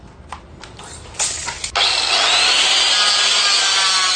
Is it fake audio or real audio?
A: real